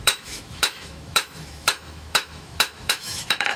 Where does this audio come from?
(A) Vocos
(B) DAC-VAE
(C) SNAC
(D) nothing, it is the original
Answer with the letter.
B